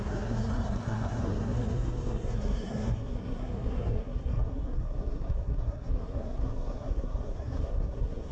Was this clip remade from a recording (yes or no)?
yes